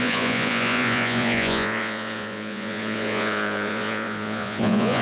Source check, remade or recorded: remade